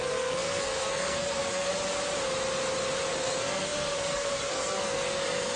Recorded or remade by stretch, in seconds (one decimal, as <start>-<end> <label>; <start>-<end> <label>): 0.0-1.7 remade; 1.7-3.1 recorded; 3.1-5.6 remade